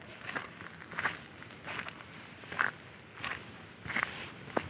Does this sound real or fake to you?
real